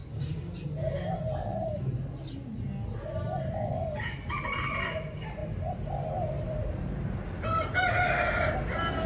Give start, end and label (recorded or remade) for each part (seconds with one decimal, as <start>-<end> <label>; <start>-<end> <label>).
0.0-9.1 recorded